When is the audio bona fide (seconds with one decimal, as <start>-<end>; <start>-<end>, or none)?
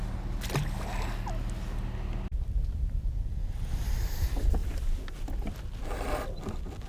0.0-6.9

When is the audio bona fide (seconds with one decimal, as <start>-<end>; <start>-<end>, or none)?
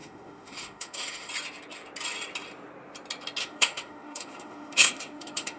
1.3-3.4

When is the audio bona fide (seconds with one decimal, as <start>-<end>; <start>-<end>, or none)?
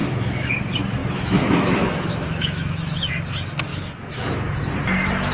0.5-1.0; 3.1-3.7; 4.6-5.3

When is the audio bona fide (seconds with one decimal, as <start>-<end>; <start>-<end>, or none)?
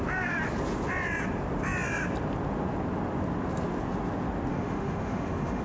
0.0-4.5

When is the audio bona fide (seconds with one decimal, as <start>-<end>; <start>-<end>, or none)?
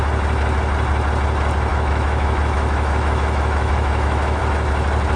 0.0-1.7; 4.4-5.2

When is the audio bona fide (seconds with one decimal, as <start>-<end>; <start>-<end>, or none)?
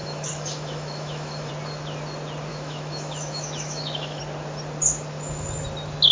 1.5-2.5; 4.2-6.1